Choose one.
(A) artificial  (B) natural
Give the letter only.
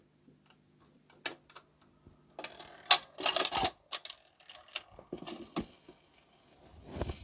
B